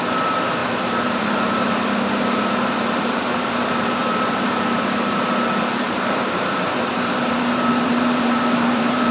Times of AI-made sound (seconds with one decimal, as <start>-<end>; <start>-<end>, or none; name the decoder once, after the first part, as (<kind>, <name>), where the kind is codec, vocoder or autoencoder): 0.0-9.1 (vocoder, BigVGAN v2)